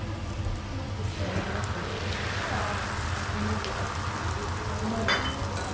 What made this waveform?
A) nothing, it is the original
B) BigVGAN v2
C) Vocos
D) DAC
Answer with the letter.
A